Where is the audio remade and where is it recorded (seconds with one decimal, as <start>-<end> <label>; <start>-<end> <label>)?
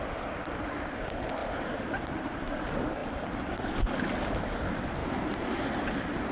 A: 0.0-1.4 recorded; 1.4-2.6 remade; 2.6-5.0 recorded; 5.0-5.6 remade; 5.6-6.3 recorded